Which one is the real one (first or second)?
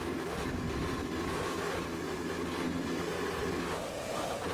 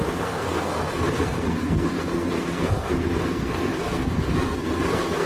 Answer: first